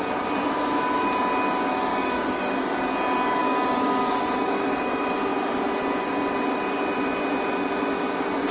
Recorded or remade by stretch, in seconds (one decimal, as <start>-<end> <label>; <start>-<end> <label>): 0.0-1.9 recorded; 1.9-2.5 remade; 2.5-3.4 recorded; 3.4-4.8 remade; 4.8-8.5 recorded